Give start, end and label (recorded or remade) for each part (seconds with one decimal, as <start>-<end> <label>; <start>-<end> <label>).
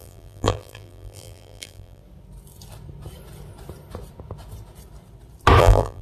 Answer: 0.0-2.0 remade; 2.0-5.6 recorded; 5.6-6.0 remade